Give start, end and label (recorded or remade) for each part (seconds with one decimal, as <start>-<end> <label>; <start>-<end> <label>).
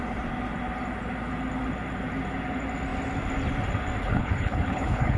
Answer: 0.0-4.0 recorded; 4.0-5.2 remade